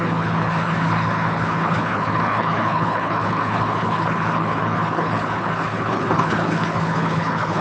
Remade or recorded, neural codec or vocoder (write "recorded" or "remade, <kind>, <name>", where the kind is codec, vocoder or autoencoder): remade, codec, HILCodec